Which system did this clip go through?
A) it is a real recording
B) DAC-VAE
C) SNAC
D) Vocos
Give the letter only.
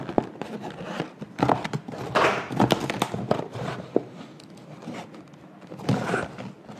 A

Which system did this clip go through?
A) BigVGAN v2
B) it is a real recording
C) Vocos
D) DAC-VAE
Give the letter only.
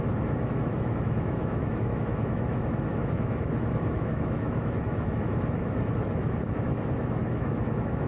D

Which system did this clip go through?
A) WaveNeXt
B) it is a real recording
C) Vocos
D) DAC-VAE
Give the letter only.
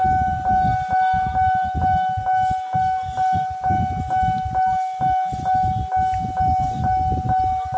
B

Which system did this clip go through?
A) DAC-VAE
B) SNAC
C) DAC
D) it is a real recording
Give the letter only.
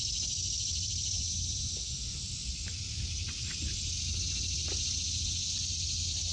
D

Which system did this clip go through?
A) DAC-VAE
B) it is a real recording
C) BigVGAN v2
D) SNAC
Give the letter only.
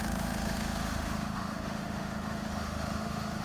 A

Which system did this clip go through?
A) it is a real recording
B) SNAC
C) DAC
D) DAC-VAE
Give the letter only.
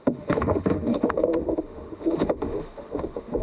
D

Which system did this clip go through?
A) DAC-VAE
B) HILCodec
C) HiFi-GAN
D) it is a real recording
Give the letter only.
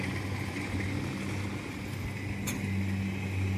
D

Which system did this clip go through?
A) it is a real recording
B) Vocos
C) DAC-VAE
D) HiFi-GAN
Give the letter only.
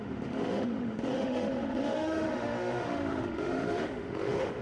C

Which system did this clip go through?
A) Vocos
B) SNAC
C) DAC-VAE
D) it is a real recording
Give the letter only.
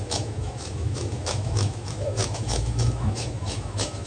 C